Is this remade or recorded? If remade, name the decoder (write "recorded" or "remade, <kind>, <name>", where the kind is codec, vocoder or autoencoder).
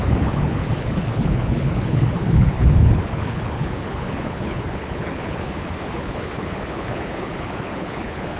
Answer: remade, codec, HILCodec